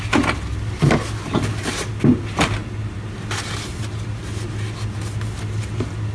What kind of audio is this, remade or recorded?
recorded